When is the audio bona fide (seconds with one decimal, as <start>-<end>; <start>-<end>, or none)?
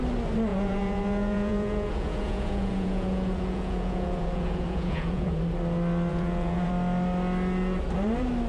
0.0-0.5; 5.4-6.1; 6.7-8.5